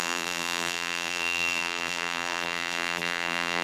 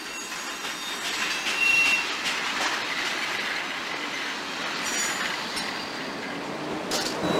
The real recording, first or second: second